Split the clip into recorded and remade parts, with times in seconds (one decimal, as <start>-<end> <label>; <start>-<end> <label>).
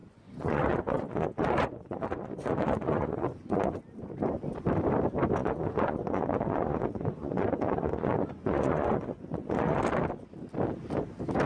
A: 0.0-3.8 remade; 3.8-5.4 recorded; 5.4-9.8 remade; 9.8-11.5 recorded